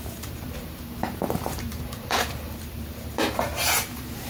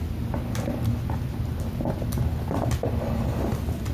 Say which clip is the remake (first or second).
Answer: first